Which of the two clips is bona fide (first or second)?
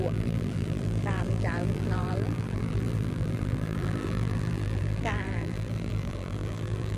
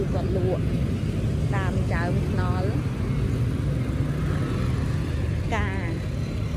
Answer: second